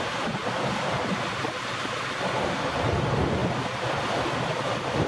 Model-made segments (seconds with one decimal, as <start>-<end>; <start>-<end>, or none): none